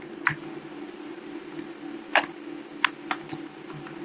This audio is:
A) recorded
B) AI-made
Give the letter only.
A